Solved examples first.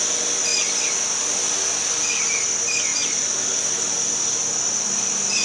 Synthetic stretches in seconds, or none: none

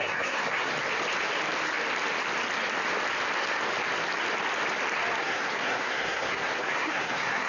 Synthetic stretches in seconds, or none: 0.0-0.7; 5.2-7.5